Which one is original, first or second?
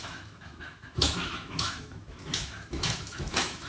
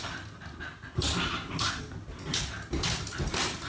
second